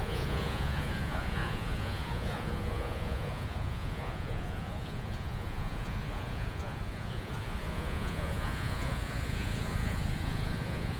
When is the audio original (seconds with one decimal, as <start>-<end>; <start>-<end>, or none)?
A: none